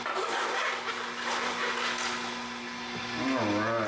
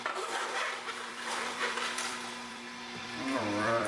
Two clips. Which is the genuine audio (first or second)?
first